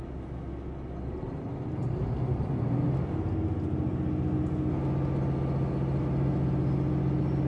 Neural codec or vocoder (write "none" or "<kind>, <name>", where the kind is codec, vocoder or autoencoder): none